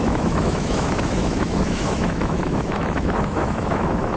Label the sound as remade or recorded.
remade